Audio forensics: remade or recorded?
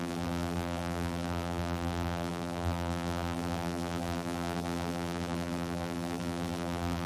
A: remade